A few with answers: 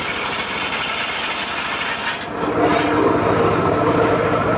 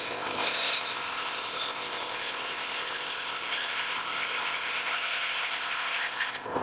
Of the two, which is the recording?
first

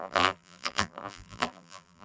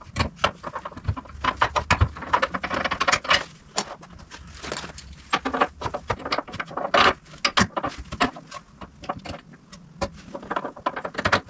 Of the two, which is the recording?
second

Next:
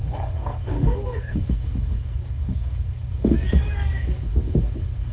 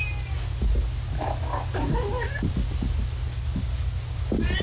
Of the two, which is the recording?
second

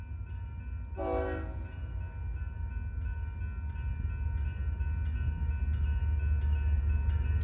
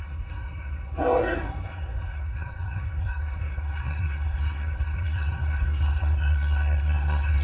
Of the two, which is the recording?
first